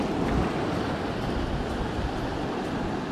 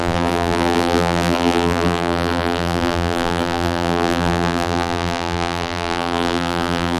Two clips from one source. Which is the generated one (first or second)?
second